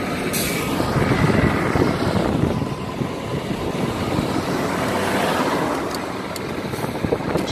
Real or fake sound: real